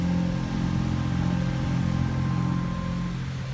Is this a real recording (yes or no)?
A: yes